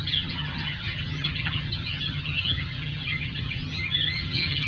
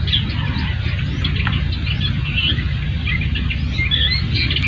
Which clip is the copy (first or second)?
first